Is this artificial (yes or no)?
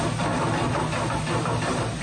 no